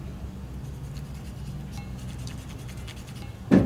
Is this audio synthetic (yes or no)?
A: no